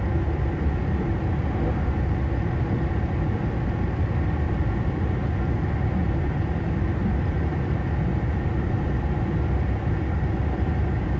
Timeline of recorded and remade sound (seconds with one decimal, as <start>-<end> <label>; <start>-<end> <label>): 0.0-7.1 recorded; 7.1-7.8 remade; 7.8-11.2 recorded